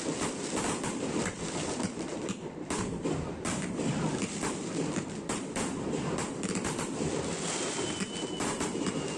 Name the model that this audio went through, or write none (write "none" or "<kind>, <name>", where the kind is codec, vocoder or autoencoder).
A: vocoder, BigVGAN v2